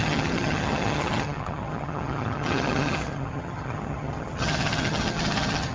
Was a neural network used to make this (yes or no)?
yes